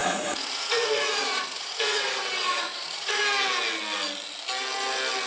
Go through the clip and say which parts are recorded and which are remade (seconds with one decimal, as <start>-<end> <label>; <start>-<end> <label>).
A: 0.0-3.2 remade; 3.2-5.3 recorded